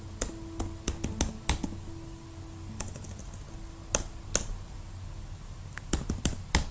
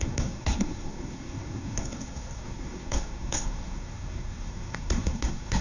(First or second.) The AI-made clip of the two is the second